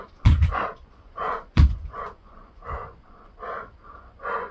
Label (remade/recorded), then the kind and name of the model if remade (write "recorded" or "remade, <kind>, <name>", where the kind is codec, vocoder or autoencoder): remade, vocoder, Vocos